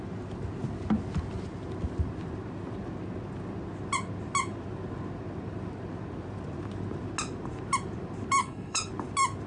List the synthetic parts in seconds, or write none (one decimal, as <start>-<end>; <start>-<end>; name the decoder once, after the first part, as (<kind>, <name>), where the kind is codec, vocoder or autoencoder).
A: 8.4-8.9 (codec, HILCodec)